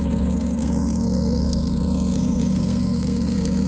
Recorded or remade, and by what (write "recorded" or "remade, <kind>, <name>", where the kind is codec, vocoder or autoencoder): remade, codec, SNAC